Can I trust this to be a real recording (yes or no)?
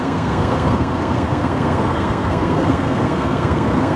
no